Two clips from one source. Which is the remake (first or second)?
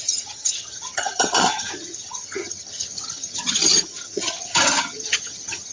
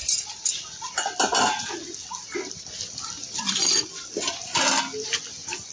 first